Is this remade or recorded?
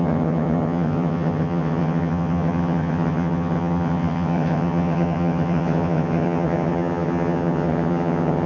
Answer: remade